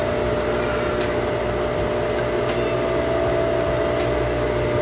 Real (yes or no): yes